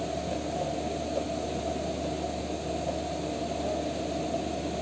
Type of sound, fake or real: real